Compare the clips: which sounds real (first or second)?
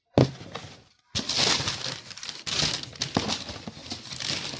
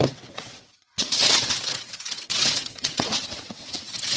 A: first